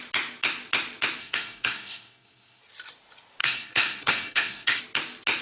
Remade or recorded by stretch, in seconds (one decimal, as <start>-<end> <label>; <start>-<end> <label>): 0.0-1.2 recorded; 1.2-2.6 remade; 2.6-3.4 recorded; 3.4-4.8 remade; 4.8-5.4 recorded